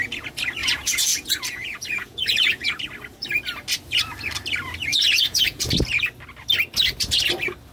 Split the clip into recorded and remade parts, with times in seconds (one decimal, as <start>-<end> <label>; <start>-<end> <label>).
0.0-0.6 recorded; 0.6-2.7 remade; 2.7-4.9 recorded; 4.9-5.7 remade; 5.7-7.7 recorded

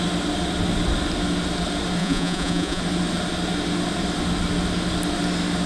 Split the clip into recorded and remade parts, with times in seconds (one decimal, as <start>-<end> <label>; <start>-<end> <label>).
0.0-2.0 recorded; 2.0-2.8 remade; 2.8-5.7 recorded

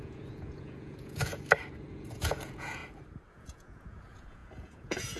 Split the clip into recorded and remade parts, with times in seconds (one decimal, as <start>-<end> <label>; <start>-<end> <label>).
0.0-1.3 remade; 1.3-1.9 recorded; 1.9-2.8 remade; 2.8-3.3 recorded; 3.3-5.2 remade

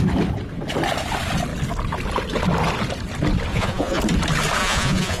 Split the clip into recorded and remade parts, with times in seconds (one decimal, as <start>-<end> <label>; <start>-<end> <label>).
0.0-3.5 recorded; 3.5-4.0 remade; 4.0-4.6 recorded; 4.6-5.2 remade

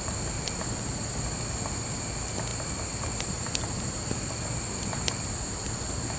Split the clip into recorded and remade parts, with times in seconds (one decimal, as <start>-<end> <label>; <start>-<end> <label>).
0.0-6.2 recorded

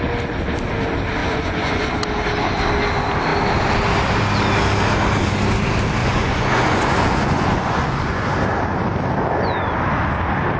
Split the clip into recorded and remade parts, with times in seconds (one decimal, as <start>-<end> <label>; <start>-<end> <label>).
0.0-1.2 recorded; 1.2-1.9 remade; 1.9-6.0 recorded; 6.0-8.3 remade; 8.3-10.6 recorded

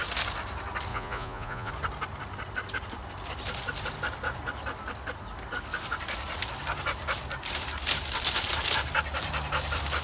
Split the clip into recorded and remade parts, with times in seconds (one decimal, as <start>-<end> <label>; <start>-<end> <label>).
0.0-0.9 recorded; 0.9-1.7 remade; 1.7-10.0 recorded

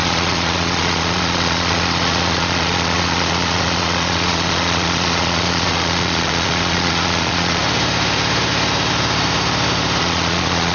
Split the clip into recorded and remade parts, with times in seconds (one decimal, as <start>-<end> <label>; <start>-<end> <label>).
0.0-7.6 remade; 7.6-10.0 recorded; 10.0-10.7 remade